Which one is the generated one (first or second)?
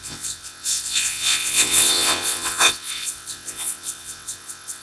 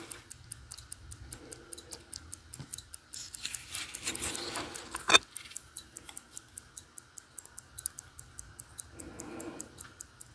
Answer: first